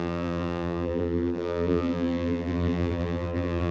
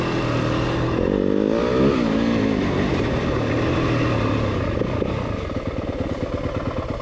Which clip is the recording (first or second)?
second